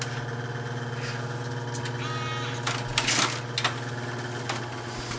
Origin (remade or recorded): recorded